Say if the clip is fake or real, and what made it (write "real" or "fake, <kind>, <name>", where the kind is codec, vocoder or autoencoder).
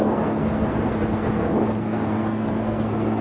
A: fake, codec, SNAC